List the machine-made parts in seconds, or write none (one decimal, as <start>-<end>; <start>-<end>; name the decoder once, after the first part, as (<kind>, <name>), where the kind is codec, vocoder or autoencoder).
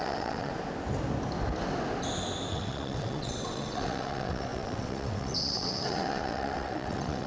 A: 0.0-0.5 (vocoder, WaveNeXt); 2.5-7.3